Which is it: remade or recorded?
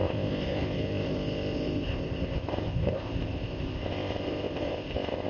remade